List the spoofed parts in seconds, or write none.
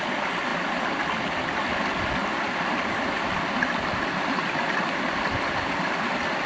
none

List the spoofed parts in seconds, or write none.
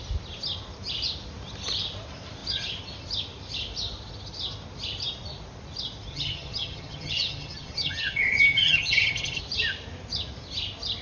6.1-9.4 (vocoder, HiFi-GAN)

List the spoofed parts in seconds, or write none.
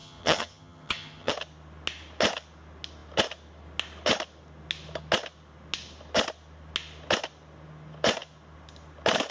0.0-1.3 (vocoder, HiFi-GAN)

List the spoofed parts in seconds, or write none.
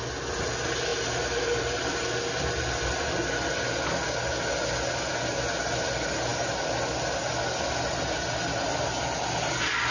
none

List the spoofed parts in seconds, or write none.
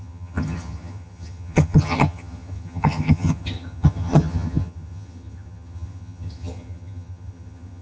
0.0-7.8 (vocoder, HiFi-GAN)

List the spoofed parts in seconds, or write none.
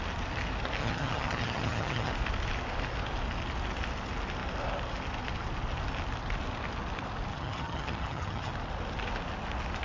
0.8-2.1 (vocoder, HiFi-GAN); 7.3-8.5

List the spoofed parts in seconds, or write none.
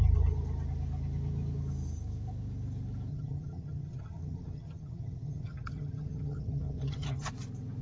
3.1-7.3 (vocoder, HiFi-GAN)